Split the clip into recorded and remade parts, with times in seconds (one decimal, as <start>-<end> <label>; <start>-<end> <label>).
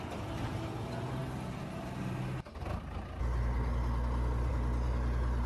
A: 0.0-5.5 recorded